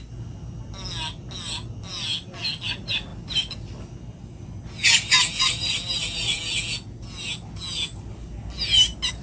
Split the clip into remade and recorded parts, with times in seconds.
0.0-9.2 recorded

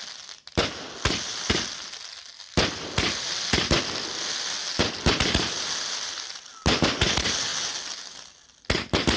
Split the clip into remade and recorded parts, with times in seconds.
0.0-9.2 recorded

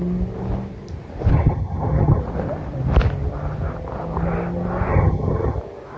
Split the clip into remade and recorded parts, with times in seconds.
0.0-1.3 recorded; 1.3-2.2 remade; 2.2-4.9 recorded; 4.9-5.6 remade; 5.6-6.0 recorded

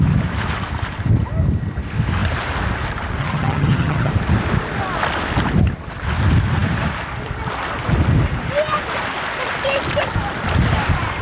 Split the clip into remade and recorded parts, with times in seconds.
0.0-3.2 recorded; 3.2-4.1 remade; 4.1-11.2 recorded

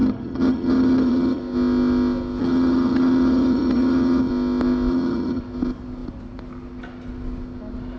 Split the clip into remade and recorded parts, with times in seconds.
0.0-1.4 remade; 1.4-2.4 recorded; 2.4-4.3 remade; 4.3-4.9 recorded; 4.9-5.4 remade; 5.4-8.0 recorded

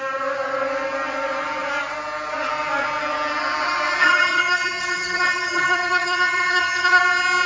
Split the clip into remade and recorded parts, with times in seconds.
0.0-4.0 recorded; 4.0-7.0 remade; 7.0-7.5 recorded